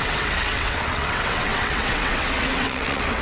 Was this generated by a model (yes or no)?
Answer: yes